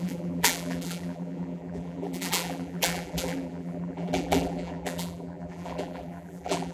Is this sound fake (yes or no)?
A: yes